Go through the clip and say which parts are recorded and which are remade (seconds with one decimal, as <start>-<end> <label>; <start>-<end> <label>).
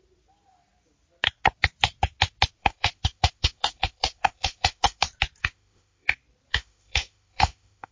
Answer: 0.0-2.6 recorded; 2.6-5.0 remade; 5.0-5.4 recorded; 5.4-6.1 remade; 6.1-6.5 recorded; 6.5-7.9 remade